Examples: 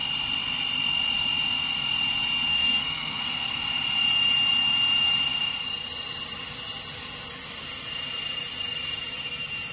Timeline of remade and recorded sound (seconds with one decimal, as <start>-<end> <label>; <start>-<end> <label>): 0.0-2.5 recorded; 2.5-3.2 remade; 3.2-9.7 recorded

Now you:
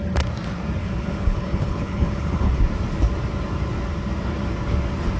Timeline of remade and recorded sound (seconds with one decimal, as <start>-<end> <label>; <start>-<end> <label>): 0.0-0.8 recorded; 0.8-2.6 remade; 2.6-5.2 recorded

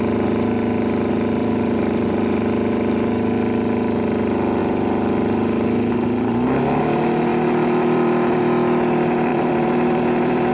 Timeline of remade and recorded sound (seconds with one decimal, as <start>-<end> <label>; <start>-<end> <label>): 0.0-1.4 recorded; 1.4-2.4 remade; 2.4-7.3 recorded; 7.3-8.4 remade; 8.4-9.3 recorded; 9.3-10.5 remade

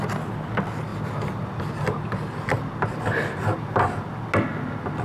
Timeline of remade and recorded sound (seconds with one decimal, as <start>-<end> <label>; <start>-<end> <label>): 0.0-5.0 recorded

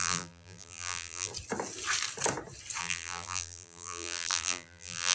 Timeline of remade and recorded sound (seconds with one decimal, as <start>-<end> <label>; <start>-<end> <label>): 0.0-1.3 remade; 1.3-2.8 recorded; 2.8-5.1 remade

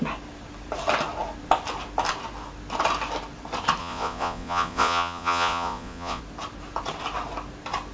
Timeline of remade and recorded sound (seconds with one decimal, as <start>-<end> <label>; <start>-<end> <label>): 0.0-3.8 recorded; 3.8-6.2 remade; 6.2-7.9 recorded